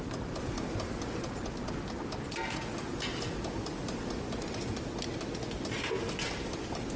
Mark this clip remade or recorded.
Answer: recorded